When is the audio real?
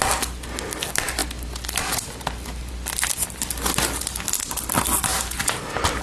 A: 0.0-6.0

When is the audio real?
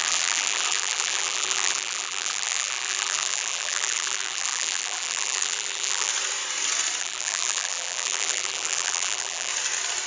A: 6.1-7.0; 9.5-10.1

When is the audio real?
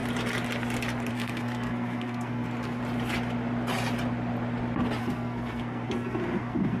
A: 0.0-1.1; 2.8-5.0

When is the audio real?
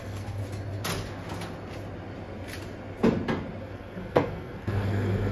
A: 0.4-3.6